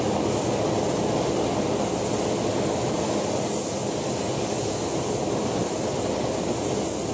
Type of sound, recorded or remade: recorded